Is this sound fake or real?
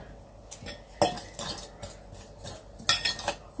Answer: real